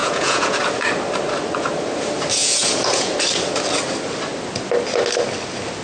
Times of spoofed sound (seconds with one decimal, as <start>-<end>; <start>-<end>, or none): 0.0-0.6; 2.4-3.1